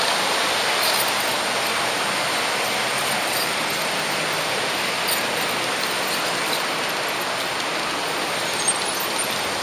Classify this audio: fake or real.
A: real